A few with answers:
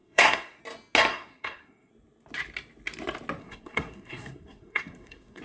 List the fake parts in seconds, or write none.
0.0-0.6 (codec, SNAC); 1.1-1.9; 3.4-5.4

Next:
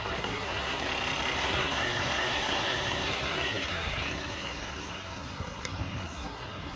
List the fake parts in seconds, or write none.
0.0-0.9 (codec, SNAC); 1.4-6.8

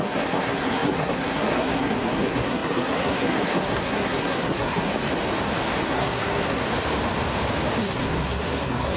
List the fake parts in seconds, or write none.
0.0-4.9 (codec, SNAC); 5.9-6.6; 7.8-9.0

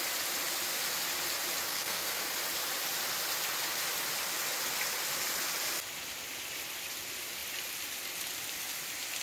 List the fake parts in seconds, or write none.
1.7-2.2 (codec, SNAC)

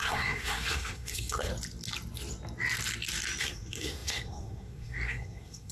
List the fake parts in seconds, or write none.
0.0-1.5 (codec, SNAC); 3.4-5.7

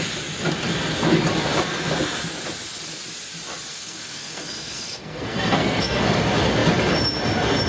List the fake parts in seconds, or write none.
3.7-6.0 (codec, SNAC)

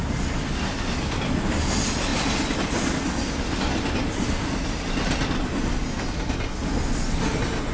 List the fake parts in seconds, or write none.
none